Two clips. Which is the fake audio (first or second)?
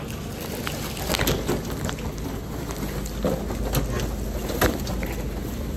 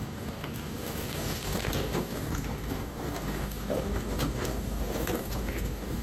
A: second